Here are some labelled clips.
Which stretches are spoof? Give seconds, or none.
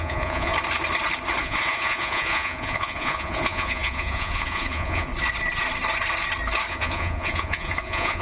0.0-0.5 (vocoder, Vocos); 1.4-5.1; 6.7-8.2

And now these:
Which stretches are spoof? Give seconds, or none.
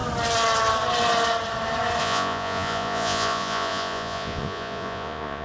2.0-5.4 (vocoder, Vocos)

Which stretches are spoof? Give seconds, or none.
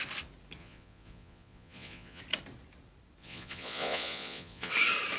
0.6-2.2 (vocoder, Vocos); 3.2-4.7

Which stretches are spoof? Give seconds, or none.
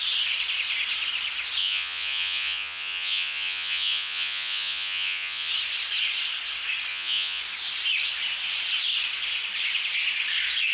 1.6-5.5 (vocoder, Vocos); 6.9-7.4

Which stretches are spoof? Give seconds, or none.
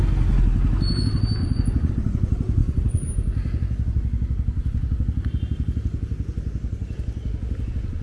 1.4-1.9 (vocoder, Vocos); 2.6-3.1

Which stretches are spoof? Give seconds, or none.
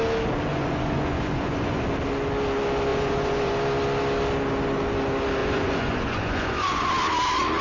0.5-1.8 (vocoder, Vocos); 2.9-3.5; 5.4-6.9